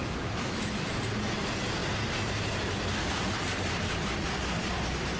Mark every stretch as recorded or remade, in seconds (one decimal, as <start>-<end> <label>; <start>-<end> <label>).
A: 0.0-0.9 remade; 0.9-5.2 recorded

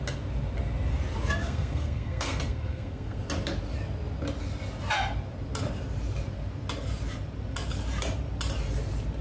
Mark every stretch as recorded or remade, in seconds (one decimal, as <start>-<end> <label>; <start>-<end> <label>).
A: 0.0-1.4 recorded; 1.4-3.2 remade; 3.2-9.2 recorded

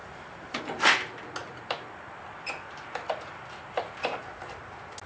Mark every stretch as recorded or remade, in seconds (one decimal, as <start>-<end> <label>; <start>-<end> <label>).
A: 0.0-0.6 remade; 0.6-1.4 recorded; 1.4-4.2 remade; 4.2-5.1 recorded

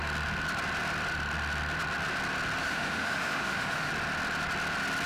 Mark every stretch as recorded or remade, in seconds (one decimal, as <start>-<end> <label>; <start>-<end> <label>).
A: 0.0-2.6 recorded; 2.6-3.9 remade; 3.9-5.1 recorded

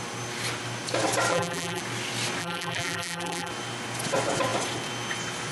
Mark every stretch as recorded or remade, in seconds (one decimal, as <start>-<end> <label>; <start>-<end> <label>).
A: 0.0-1.3 recorded; 1.3-1.8 remade; 1.8-2.4 recorded; 2.4-3.5 remade; 3.5-5.5 recorded